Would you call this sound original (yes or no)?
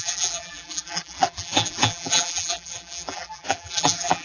no